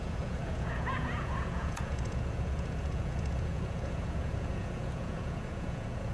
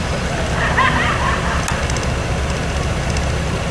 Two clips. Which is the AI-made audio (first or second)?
first